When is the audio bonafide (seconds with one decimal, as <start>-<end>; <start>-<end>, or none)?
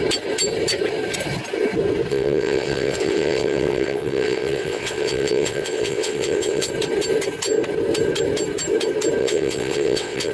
0.0-2.1; 6.7-9.2